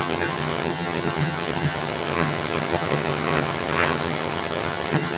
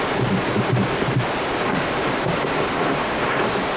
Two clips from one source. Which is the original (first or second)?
second